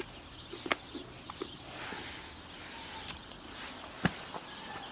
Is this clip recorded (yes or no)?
yes